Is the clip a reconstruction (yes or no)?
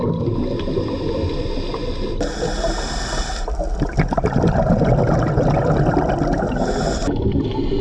no